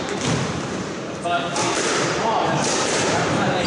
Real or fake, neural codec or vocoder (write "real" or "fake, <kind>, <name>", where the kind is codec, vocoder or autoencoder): fake, vocoder, BigVGAN v2